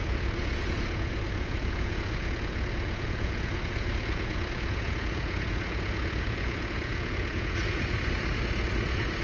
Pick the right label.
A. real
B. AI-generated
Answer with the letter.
B